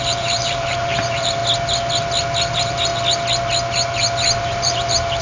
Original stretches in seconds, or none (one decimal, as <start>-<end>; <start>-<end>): 1.4-2.5; 2.9-4.4